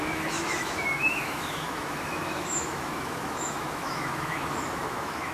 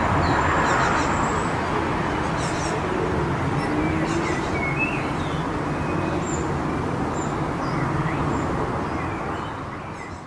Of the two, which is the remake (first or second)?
first